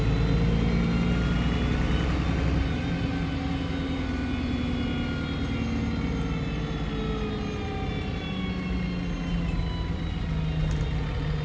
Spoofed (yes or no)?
no